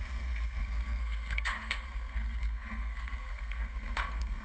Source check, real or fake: fake